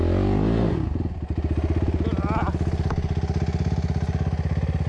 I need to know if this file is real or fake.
real